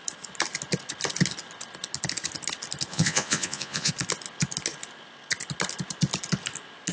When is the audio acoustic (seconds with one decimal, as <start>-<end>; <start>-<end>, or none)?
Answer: 0.0-2.9; 3.9-6.9